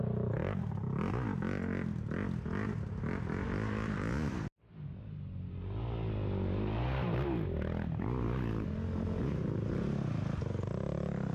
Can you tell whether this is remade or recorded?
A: recorded